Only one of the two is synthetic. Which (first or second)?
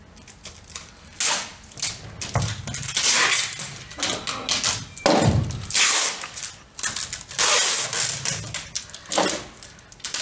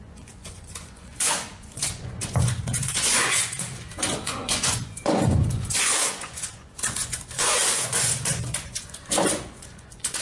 second